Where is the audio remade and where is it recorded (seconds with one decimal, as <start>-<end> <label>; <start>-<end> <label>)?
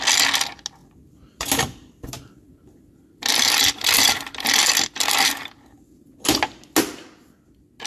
0.0-0.8 recorded; 0.8-5.5 remade; 5.5-7.9 recorded